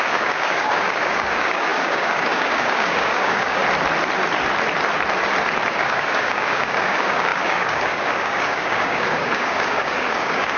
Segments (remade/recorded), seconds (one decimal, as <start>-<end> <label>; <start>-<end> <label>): 0.0-3.6 remade; 3.6-5.7 recorded; 5.7-10.6 remade